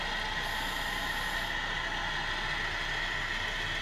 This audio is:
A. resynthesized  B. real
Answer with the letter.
B